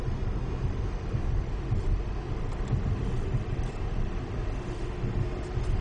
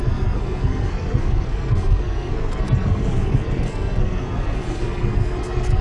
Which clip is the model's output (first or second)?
second